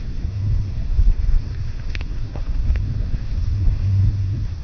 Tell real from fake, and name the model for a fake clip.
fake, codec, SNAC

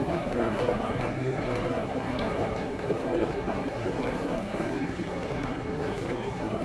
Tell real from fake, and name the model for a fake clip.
fake, codec, SNAC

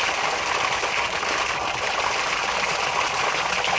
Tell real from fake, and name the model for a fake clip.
real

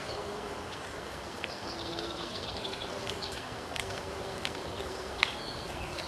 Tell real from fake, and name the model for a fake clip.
fake, codec, SNAC